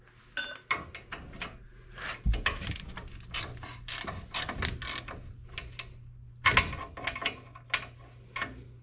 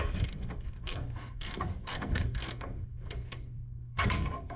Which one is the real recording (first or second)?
first